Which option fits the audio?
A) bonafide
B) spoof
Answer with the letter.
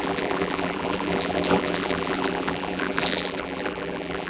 B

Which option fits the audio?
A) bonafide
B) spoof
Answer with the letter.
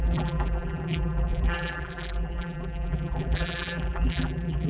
B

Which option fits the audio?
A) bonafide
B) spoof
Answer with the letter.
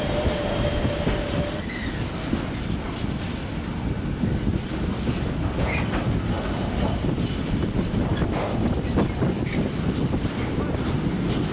A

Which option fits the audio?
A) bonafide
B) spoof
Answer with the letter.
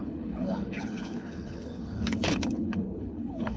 B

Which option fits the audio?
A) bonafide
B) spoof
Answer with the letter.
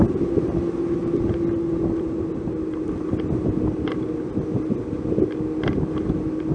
A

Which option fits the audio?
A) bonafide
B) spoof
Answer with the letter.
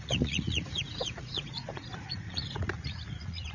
B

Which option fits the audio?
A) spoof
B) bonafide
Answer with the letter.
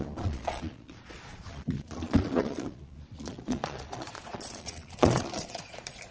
A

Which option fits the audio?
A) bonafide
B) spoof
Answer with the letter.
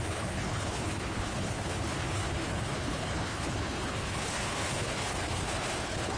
B